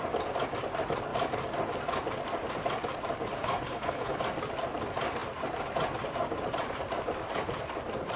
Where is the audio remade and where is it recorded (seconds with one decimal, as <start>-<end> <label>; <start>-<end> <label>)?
0.0-3.4 recorded; 3.4-4.2 remade; 4.2-8.2 recorded